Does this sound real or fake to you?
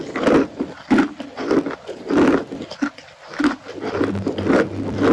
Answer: fake